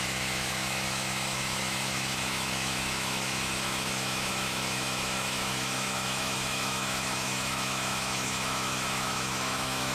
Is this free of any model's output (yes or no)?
no